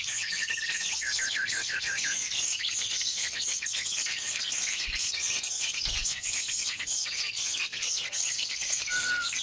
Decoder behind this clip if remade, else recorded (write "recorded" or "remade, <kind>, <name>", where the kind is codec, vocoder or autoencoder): remade, codec, SNAC